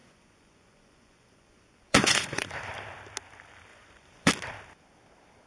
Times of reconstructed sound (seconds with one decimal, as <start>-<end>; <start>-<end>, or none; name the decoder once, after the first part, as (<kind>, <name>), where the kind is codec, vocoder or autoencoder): 0.0-2.5 (vocoder, Vocos); 3.7-4.3